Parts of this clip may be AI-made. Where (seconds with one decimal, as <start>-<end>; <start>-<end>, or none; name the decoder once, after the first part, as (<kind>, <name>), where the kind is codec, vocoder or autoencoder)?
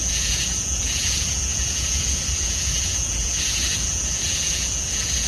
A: 0.0-5.3 (vocoder, Vocos)